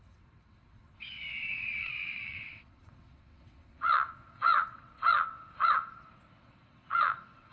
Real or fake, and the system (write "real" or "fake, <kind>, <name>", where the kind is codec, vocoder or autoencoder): fake, vocoder, WaveNeXt